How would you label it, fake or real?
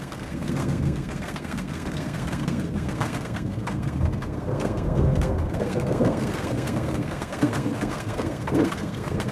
fake